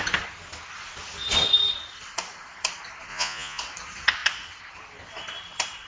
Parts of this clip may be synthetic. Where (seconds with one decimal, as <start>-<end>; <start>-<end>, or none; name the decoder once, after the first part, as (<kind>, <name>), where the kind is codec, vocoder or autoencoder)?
3.1-3.6 (vocoder, Vocos)